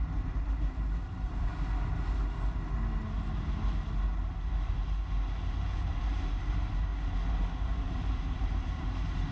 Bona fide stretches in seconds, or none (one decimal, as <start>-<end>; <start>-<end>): 1.5-6.0; 6.9-7.6